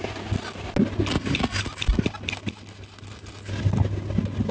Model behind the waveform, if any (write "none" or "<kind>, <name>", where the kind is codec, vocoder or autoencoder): none